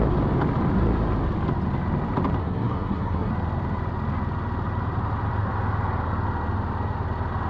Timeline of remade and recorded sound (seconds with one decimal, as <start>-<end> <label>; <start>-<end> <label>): 0.0-2.4 recorded; 2.4-3.3 remade; 3.3-7.5 recorded